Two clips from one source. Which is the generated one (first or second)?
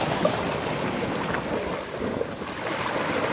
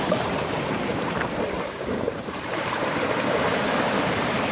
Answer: second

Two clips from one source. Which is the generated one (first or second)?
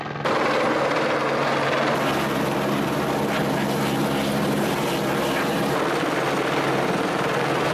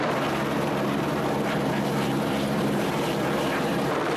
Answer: second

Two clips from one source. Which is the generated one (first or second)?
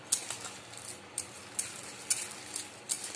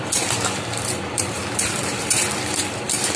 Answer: second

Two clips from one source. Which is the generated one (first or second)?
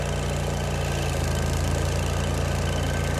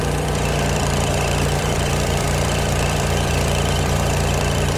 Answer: second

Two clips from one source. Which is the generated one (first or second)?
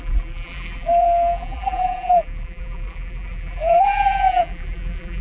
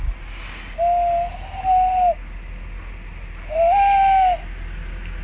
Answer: first